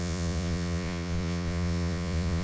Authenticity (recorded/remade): remade